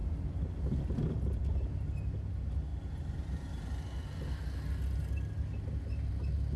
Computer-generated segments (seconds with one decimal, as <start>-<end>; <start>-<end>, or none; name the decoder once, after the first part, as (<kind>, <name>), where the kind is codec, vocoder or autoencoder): none